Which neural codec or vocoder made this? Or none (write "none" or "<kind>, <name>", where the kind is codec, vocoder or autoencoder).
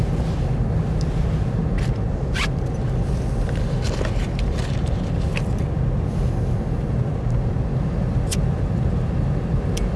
none